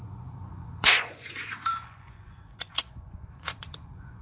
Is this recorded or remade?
remade